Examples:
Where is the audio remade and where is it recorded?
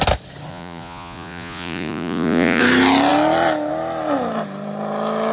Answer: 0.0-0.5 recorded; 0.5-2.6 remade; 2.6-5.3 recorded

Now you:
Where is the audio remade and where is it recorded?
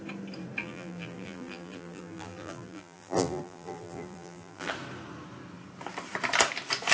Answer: 0.0-0.6 recorded; 0.6-4.7 remade; 4.7-6.9 recorded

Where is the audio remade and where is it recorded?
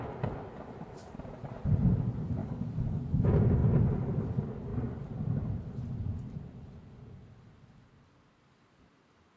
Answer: 0.0-2.4 recorded; 2.4-3.0 remade; 3.0-9.4 recorded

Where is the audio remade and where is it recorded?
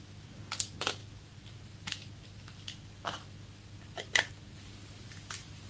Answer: 0.0-5.7 recorded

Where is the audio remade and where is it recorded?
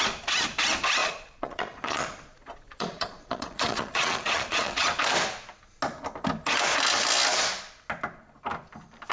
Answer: 0.0-1.0 recorded; 1.0-4.9 remade; 4.9-9.1 recorded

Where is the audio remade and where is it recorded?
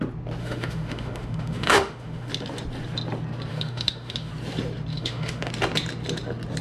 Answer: 0.0-0.4 recorded; 0.4-2.3 remade; 2.3-3.5 recorded; 3.5-4.3 remade; 4.3-4.9 recorded; 4.9-5.5 remade; 5.5-6.6 recorded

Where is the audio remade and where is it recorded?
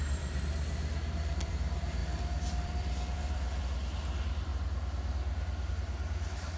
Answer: 0.0-4.5 remade; 4.5-5.7 recorded; 5.7-6.6 remade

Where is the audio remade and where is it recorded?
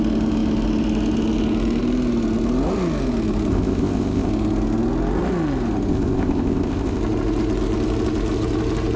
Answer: 0.0-3.5 recorded; 3.5-4.3 remade; 4.3-5.9 recorded; 5.9-7.0 remade; 7.0-9.0 recorded